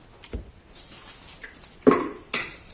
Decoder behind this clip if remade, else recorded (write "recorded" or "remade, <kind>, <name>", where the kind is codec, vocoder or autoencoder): recorded